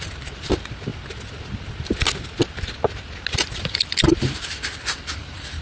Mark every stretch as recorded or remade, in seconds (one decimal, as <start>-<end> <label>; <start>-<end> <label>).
0.0-0.9 remade; 0.9-3.3 recorded; 3.3-5.6 remade